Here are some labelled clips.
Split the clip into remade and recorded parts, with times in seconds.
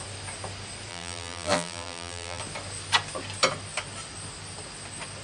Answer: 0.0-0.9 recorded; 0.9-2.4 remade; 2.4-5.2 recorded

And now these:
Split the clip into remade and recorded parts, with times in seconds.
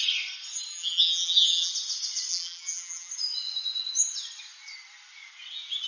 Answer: 0.0-0.7 recorded; 0.7-1.7 remade; 1.7-2.3 recorded; 2.3-3.1 remade; 3.1-5.9 recorded